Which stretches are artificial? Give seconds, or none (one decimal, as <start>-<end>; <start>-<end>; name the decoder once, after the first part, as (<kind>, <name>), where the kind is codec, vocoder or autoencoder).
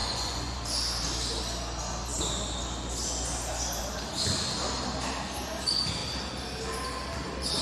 0.0-0.6 (vocoder, Vocos)